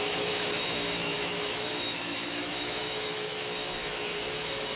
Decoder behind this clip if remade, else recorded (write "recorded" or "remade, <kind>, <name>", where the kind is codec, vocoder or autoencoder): remade, autoencoder, DAC-VAE